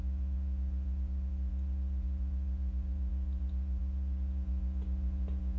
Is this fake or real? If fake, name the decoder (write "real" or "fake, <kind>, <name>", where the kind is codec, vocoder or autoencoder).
fake, vocoder, Vocos